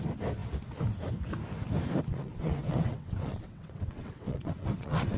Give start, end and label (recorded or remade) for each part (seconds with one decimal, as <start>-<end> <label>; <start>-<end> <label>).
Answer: 0.0-2.1 recorded; 2.1-5.2 remade